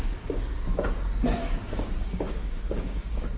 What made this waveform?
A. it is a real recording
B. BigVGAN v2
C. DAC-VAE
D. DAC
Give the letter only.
D